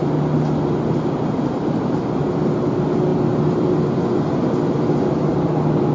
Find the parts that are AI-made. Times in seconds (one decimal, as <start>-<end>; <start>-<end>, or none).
none